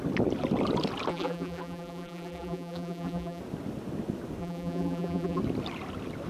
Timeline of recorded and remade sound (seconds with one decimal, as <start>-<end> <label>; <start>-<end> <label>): 0.0-1.1 recorded; 1.1-3.4 remade; 3.4-4.4 recorded; 4.4-5.4 remade; 5.4-6.3 recorded

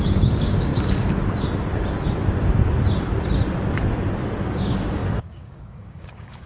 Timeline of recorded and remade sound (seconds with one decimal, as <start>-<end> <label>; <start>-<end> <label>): 0.0-0.7 remade; 0.7-4.6 recorded; 4.6-6.5 remade

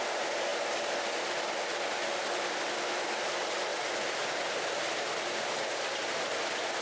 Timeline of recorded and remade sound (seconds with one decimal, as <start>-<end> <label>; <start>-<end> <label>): 0.0-6.8 recorded